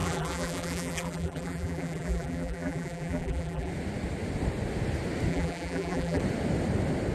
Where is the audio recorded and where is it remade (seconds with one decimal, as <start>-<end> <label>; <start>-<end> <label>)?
0.0-3.7 remade; 3.7-5.3 recorded; 5.3-6.2 remade; 6.2-7.1 recorded